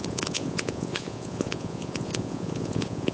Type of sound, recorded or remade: remade